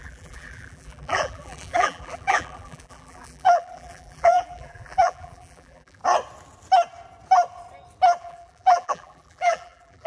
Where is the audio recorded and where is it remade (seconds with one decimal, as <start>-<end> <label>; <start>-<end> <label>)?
0.0-6.0 remade; 6.0-8.2 recorded; 8.2-10.1 remade